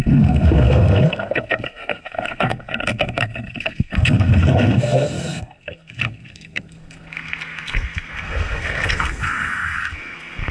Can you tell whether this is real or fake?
fake